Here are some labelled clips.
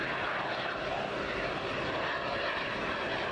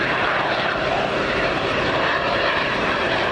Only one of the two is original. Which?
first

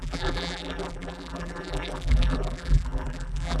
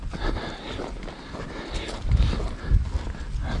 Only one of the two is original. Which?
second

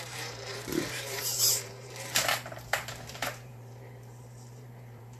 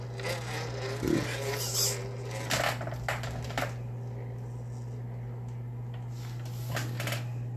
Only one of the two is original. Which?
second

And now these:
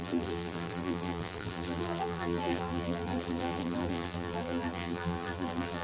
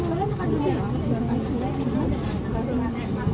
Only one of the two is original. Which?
second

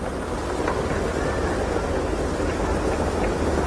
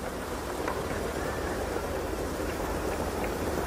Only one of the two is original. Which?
first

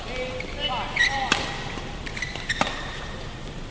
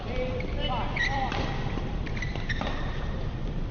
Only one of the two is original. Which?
first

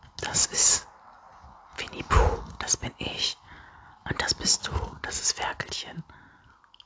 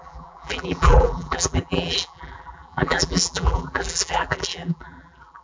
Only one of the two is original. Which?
first